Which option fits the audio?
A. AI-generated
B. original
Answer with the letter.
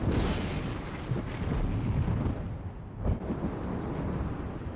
B